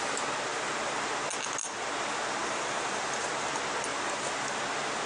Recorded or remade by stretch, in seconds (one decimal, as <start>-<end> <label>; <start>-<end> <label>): 0.0-0.5 recorded; 0.5-1.0 remade; 1.0-2.4 recorded; 2.4-3.3 remade; 3.3-3.9 recorded; 3.9-4.6 remade; 4.6-5.1 recorded